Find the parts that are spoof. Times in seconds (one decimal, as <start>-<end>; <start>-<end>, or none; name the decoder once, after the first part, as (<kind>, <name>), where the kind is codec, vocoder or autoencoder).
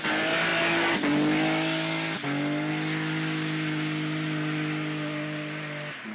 none